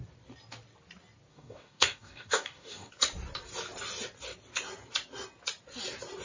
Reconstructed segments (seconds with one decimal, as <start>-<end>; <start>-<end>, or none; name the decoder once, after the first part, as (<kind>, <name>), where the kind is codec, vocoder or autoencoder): 1.3-2.9 (codec, DAC)